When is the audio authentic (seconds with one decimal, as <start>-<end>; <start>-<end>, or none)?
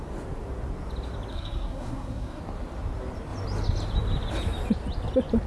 0.0-1.3; 2.4-5.5